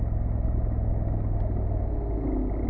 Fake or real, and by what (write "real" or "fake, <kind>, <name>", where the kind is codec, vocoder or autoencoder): real